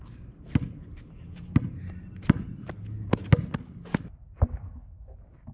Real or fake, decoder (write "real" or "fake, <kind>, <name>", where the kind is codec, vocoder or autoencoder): real